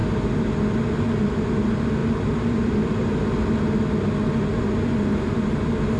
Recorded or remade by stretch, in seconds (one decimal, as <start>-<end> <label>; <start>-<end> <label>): 0.0-6.0 recorded